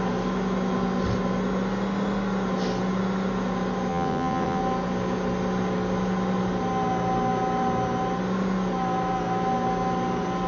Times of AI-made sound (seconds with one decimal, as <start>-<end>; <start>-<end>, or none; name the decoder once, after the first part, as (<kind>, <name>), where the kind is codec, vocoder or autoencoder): 3.9-4.6 (vocoder, WaveNeXt)